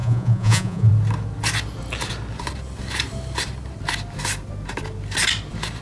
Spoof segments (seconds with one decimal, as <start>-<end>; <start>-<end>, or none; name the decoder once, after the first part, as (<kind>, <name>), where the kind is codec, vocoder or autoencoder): 0.0-0.9 (vocoder, Vocos)